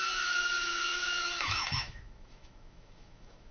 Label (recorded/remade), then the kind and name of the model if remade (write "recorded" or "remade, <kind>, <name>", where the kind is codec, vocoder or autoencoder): remade, autoencoder, DAC-VAE